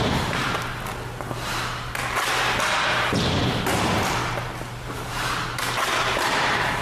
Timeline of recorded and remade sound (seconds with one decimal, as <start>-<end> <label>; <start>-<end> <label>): 0.0-0.7 remade; 0.7-4.8 recorded; 4.8-6.8 remade